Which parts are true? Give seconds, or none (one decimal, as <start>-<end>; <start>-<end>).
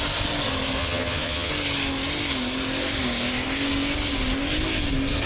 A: 0.0-0.8; 1.5-5.3